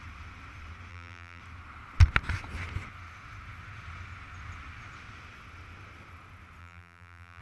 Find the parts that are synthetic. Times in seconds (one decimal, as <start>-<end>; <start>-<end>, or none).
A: 0.9-1.4; 6.6-7.4

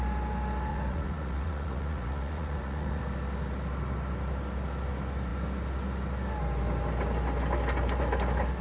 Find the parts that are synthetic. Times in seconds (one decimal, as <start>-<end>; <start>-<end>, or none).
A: 0.7-3.0